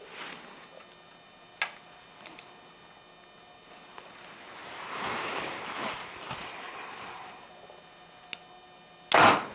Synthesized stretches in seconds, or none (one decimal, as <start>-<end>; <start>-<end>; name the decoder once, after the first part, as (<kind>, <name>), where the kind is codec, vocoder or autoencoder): 4.6-6.3 (vocoder, BigVGAN v2)